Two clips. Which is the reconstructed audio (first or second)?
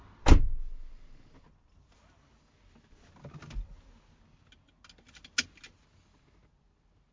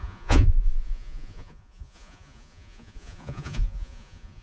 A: second